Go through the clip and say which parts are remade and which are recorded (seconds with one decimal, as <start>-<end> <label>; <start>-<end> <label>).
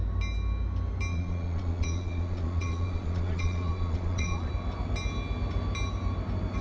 0.0-1.1 recorded; 1.1-4.5 remade; 4.5-6.6 recorded